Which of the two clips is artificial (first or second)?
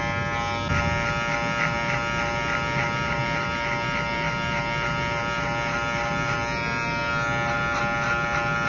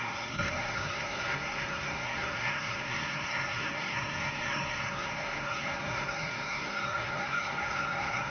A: second